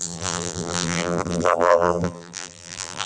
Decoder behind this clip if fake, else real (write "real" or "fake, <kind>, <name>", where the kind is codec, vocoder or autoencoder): fake, vocoder, BigVGAN v2